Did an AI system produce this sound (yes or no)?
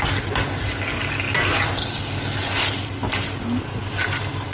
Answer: no